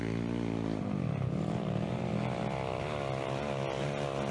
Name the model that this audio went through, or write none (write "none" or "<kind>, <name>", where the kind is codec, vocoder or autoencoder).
none